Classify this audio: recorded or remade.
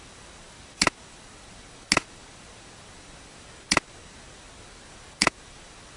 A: recorded